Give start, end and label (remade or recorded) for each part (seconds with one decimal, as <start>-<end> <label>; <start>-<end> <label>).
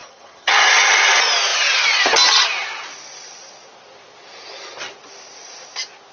0.0-0.9 remade; 0.9-6.1 recorded